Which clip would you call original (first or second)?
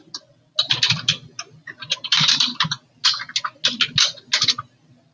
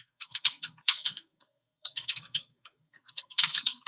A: first